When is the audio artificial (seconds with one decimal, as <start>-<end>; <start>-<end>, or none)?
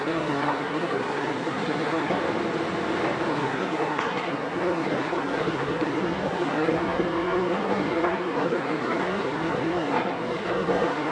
0.0-2.2; 3.3-11.1